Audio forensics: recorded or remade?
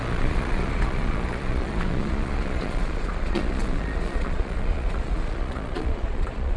remade